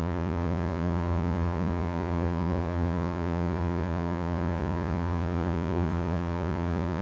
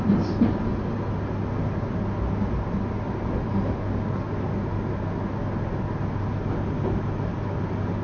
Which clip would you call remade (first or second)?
first